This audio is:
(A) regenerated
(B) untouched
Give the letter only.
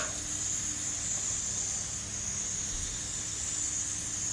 B